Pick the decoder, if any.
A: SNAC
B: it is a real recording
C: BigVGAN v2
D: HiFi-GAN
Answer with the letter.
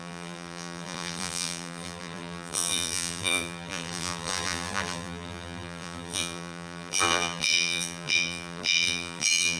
C